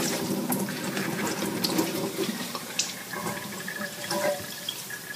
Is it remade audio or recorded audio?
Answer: remade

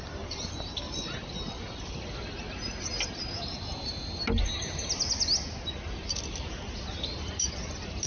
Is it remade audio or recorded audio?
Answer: recorded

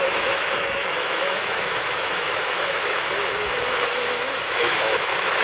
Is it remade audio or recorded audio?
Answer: remade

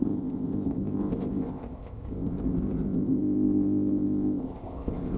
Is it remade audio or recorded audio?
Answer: remade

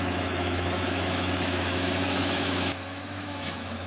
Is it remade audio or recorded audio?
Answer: remade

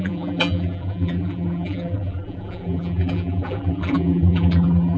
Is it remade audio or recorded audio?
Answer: remade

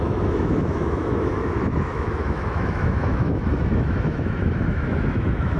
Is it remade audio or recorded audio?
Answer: remade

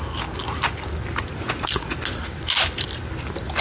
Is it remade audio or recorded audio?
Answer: recorded